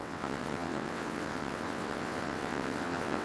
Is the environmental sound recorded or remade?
remade